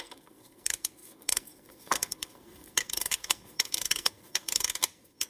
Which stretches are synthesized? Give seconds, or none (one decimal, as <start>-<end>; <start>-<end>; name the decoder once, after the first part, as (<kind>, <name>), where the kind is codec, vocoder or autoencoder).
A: 0.0-5.3 (codec, SNAC)